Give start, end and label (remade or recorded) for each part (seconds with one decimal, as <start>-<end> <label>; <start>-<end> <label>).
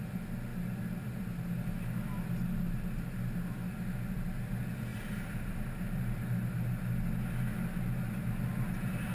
0.0-4.9 recorded; 4.9-6.8 remade; 6.8-9.1 recorded